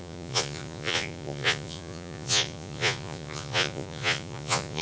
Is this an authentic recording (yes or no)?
no